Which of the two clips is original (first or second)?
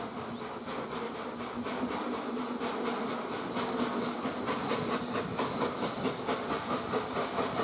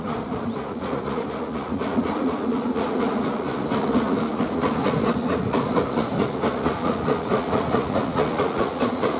first